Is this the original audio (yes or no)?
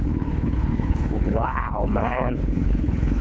no